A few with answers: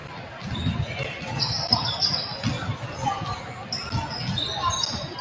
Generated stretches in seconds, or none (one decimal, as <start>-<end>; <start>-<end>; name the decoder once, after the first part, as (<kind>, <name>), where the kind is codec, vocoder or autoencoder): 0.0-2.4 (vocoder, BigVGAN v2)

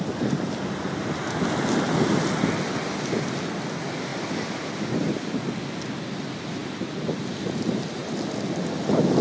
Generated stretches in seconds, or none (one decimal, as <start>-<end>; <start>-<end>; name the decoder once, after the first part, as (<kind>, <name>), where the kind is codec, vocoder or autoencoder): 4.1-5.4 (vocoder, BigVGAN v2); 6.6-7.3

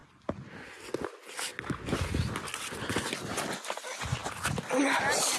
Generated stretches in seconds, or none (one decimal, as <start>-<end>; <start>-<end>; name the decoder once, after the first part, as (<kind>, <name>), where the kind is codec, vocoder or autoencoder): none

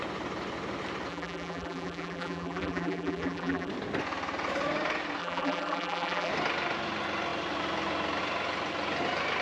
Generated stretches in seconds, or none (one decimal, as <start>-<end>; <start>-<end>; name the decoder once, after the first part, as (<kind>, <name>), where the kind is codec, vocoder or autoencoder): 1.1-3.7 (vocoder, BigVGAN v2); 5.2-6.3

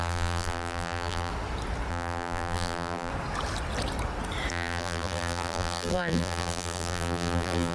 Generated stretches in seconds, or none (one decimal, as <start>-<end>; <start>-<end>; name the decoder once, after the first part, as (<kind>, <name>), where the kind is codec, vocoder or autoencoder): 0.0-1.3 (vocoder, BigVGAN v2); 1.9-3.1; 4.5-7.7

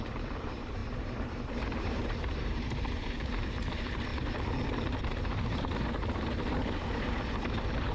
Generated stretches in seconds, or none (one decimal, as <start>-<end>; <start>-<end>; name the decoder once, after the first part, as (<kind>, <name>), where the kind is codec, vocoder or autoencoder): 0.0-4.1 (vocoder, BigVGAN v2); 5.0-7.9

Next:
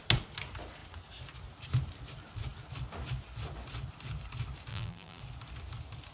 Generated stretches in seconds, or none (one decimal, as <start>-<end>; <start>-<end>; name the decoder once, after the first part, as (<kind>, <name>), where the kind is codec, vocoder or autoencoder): 4.7-5.2 (vocoder, BigVGAN v2)